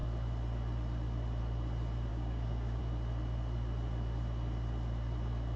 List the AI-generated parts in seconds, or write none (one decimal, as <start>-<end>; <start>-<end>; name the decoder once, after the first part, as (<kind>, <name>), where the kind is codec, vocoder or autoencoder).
2.1-2.8 (codec, DAC)